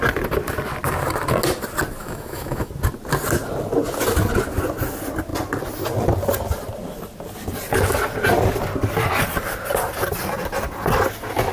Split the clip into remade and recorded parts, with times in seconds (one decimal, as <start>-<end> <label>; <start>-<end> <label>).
0.0-2.0 recorded; 2.0-2.7 remade; 2.7-11.5 recorded